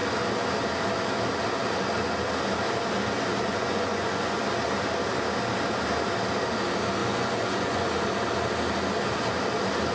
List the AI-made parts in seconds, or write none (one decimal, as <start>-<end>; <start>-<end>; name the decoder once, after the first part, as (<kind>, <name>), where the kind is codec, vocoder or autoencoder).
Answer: 3.5-4.4 (vocoder, Vocos); 7.0-7.9